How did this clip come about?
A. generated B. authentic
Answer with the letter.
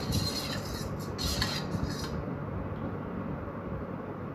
B